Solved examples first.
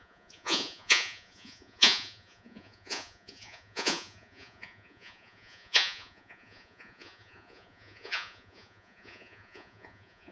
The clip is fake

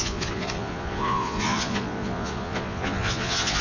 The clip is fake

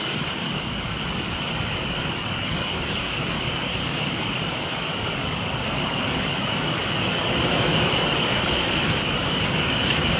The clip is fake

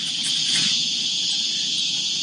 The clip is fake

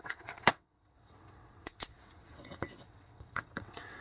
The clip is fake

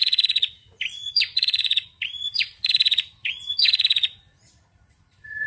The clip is fake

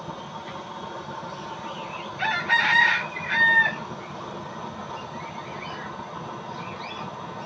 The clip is real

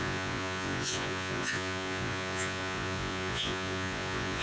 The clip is fake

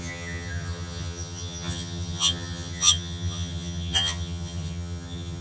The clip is fake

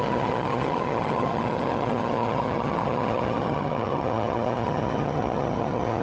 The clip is fake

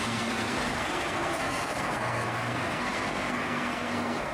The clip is fake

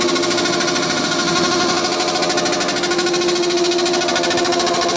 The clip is real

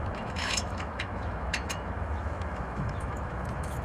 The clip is fake